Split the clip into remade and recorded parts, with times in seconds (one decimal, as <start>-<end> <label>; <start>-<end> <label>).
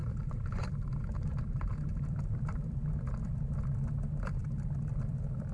0.0-3.3 remade; 3.3-5.5 recorded